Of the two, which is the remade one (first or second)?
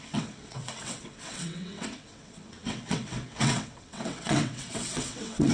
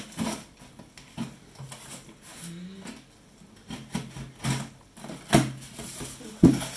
first